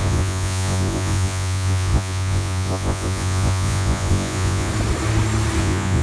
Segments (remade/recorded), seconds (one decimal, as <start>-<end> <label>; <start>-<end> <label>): 0.0-4.7 remade; 4.7-5.6 recorded; 5.6-6.0 remade